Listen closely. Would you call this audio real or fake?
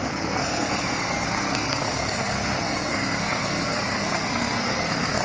fake